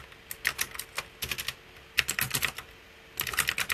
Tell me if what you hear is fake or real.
real